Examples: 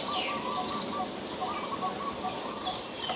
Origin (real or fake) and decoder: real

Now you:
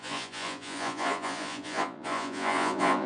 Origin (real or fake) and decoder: fake, vocoder, Vocos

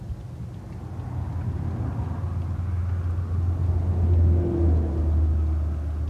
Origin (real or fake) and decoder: real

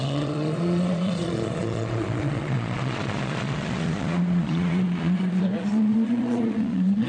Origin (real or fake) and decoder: fake, vocoder, Vocos